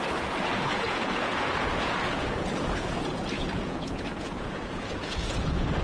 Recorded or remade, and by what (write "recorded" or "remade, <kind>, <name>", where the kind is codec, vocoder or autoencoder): remade, vocoder, Vocos